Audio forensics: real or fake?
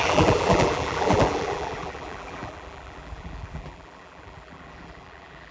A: fake